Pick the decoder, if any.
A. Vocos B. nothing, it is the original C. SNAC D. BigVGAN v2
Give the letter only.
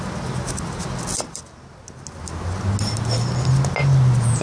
B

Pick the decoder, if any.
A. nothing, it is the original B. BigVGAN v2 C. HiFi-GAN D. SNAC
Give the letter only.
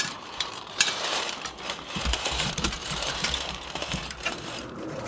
B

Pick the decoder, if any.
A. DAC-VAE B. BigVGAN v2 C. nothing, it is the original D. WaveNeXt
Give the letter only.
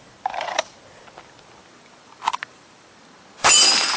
B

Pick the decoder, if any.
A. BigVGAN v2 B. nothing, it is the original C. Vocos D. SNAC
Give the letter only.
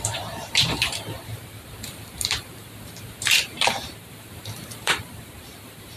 A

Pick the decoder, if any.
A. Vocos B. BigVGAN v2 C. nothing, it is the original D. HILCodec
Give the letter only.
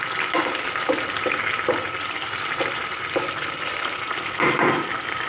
C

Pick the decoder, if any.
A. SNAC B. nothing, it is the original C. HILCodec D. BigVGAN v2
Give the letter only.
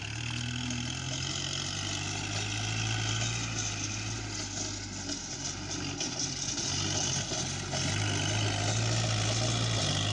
B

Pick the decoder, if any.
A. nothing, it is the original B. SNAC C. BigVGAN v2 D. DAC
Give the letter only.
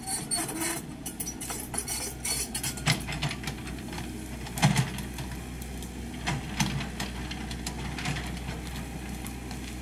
A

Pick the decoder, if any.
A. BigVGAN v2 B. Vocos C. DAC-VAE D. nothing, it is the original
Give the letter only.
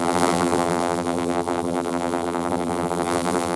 A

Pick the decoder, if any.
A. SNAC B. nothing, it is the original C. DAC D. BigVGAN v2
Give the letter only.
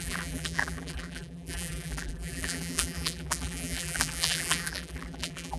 D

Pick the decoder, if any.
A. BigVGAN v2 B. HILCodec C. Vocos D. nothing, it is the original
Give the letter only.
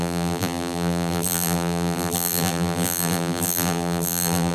A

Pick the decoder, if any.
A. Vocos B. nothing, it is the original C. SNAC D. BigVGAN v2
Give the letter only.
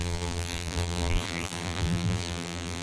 D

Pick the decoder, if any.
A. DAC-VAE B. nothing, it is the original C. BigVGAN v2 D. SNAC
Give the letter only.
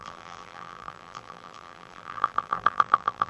C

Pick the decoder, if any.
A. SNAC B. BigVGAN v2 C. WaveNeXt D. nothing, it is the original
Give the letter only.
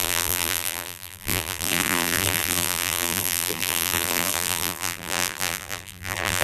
B